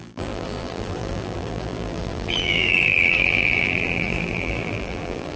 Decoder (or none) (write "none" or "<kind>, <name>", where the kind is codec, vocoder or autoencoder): vocoder, BigVGAN v2